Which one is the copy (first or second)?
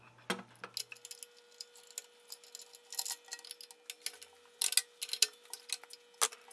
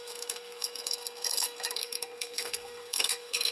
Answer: second